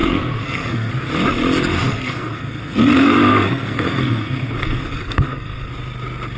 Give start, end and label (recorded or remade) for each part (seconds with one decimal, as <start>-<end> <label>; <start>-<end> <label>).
0.0-0.9 remade; 0.9-1.9 recorded; 1.9-5.7 remade; 5.7-6.4 recorded